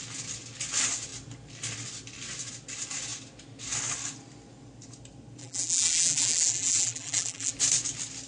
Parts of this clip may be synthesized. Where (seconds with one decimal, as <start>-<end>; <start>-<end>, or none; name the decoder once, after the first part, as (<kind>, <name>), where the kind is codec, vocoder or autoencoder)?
5.4-7.5 (vocoder, BigVGAN v2)